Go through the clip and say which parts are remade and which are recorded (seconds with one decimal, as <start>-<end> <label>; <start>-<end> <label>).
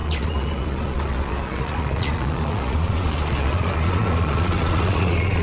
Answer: 0.0-5.4 remade